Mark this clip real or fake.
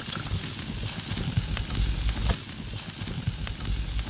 real